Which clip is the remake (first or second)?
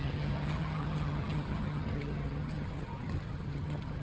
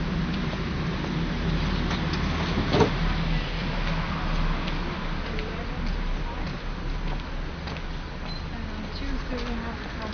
first